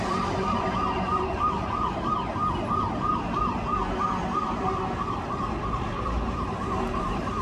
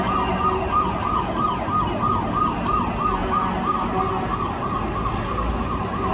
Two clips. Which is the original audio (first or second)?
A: second